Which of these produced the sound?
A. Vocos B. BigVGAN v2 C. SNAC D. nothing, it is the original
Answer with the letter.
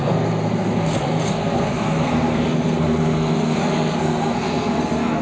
C